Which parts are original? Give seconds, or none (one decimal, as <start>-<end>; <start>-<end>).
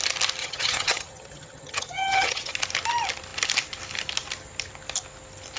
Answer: 0.0-0.4; 2.5-5.6